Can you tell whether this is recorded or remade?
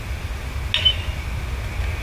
recorded